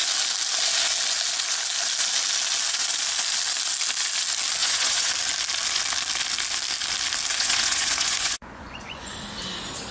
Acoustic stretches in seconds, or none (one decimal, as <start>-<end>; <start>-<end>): 0.0-4.6; 5.1-7.3; 9.1-9.9